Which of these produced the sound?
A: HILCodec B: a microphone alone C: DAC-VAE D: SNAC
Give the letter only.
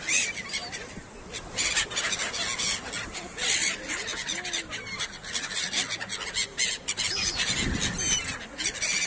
B